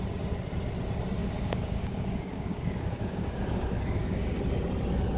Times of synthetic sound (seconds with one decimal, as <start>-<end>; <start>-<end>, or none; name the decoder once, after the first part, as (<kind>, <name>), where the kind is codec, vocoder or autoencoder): 1.2-4.3 (codec, DAC)